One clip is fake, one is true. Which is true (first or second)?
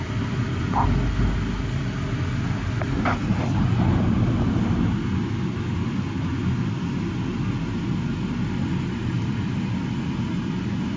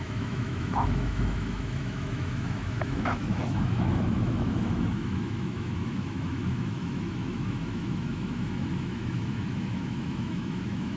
first